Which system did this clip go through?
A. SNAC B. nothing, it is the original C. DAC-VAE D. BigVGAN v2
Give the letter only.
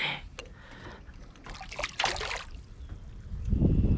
B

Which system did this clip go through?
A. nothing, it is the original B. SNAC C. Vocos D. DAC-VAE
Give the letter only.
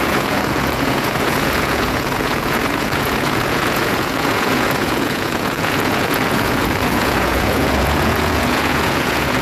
C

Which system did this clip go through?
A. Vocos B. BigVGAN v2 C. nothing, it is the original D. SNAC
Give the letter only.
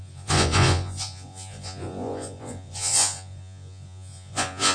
A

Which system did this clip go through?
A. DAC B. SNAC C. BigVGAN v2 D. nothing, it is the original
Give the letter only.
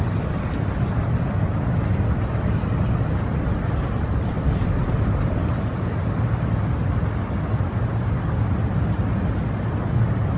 D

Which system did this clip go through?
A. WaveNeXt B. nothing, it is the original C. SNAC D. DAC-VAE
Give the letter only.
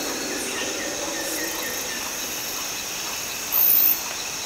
B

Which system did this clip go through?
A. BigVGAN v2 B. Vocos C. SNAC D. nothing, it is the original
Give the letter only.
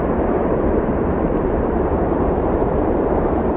A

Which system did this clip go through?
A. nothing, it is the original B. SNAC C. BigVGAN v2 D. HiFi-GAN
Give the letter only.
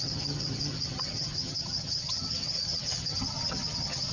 D